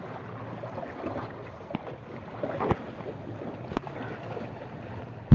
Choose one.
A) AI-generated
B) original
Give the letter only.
B